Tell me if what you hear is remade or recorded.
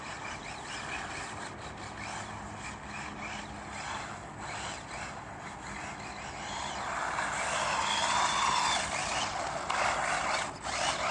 recorded